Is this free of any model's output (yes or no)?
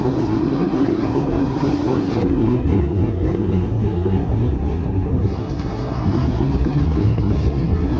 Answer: no